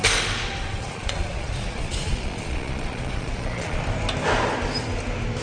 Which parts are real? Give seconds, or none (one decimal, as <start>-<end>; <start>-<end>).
0.0-0.6; 3.8-5.4